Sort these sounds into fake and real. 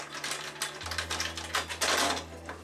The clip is real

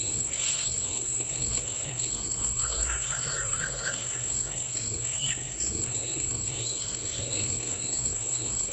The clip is fake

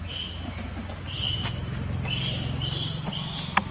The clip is real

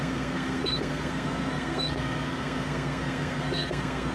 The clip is fake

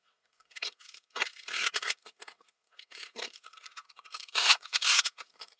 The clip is fake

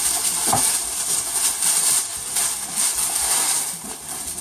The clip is real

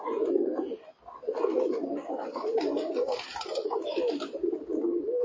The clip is real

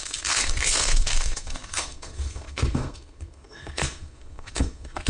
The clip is fake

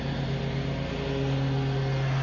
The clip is real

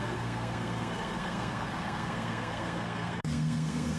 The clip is fake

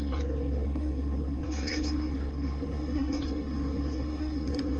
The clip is fake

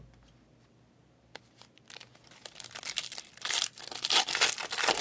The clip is real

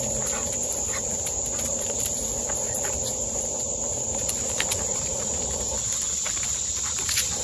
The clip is real